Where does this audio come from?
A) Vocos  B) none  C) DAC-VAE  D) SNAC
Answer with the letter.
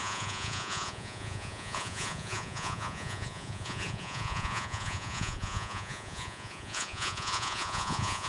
A